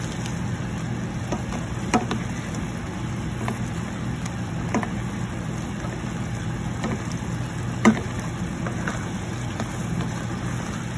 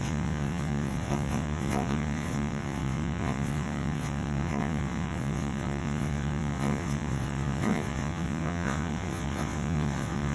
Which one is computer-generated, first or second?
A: second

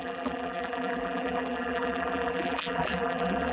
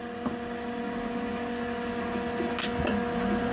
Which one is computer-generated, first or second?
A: first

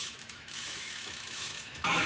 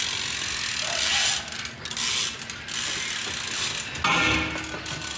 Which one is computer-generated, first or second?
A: first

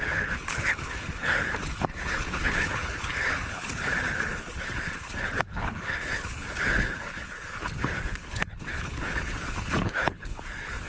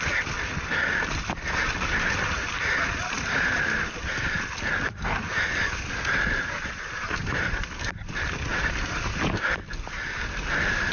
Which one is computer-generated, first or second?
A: first